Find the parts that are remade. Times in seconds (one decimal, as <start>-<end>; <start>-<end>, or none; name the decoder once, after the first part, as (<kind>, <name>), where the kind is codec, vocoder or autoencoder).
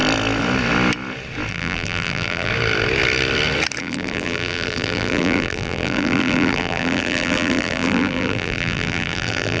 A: 1.5-2.5 (vocoder, BigVGAN v2); 3.8-9.6